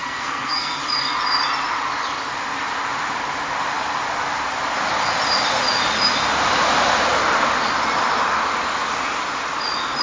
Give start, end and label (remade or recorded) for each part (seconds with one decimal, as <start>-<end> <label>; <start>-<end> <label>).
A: 0.0-0.8 remade; 0.8-10.0 recorded